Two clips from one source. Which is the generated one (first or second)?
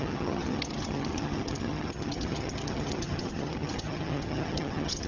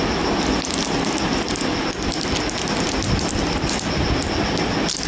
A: first